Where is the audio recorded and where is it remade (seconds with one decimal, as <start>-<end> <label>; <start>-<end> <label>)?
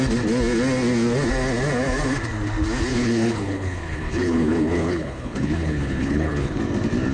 0.0-2.9 recorded; 2.9-6.6 remade; 6.6-7.1 recorded